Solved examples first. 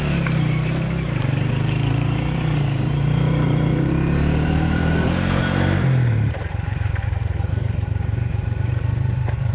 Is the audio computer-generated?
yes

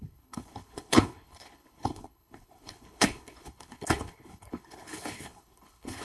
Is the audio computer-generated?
yes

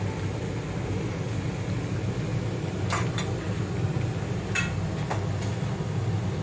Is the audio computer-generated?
no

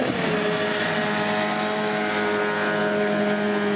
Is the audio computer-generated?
no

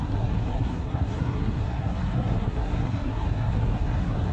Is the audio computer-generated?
yes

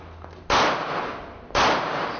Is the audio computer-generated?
no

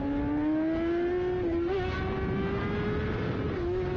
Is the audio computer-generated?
no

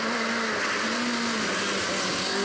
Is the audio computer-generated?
no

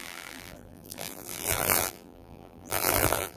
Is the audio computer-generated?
yes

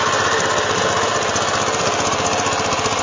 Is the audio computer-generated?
no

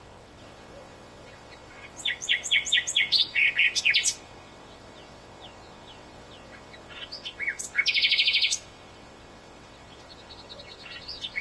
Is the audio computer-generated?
yes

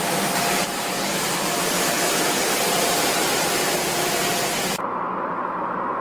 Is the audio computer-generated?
yes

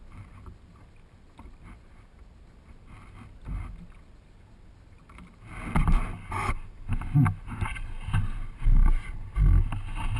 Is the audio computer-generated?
no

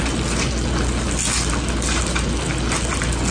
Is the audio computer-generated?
no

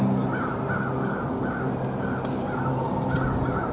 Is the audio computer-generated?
no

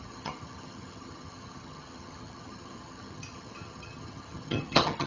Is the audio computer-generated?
yes